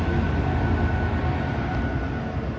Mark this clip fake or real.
real